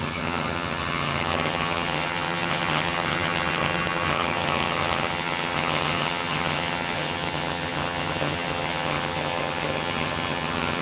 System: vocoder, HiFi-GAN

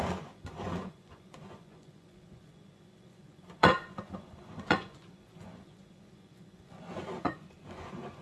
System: vocoder, Vocos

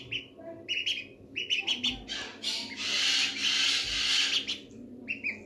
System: none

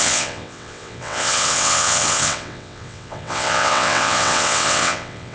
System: vocoder, WaveNeXt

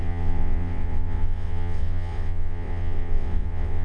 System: vocoder, WaveNeXt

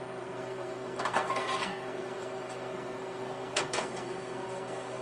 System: codec, SNAC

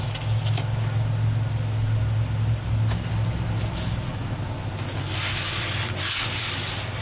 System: none